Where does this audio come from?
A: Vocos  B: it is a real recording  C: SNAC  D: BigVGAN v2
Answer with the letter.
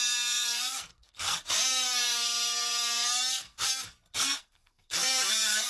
C